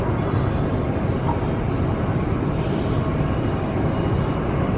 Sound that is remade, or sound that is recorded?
recorded